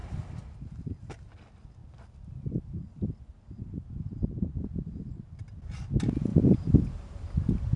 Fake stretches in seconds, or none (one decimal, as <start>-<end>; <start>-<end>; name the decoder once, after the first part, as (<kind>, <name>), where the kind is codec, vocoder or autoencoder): 0.0-1.3 (vocoder, BigVGAN v2); 6.3-7.3